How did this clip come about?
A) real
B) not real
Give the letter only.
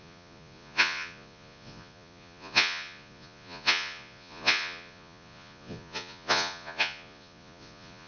B